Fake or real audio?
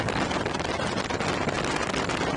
real